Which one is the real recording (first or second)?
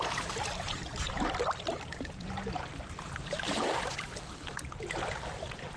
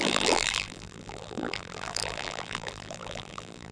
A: first